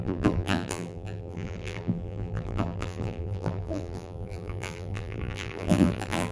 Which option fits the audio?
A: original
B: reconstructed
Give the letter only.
B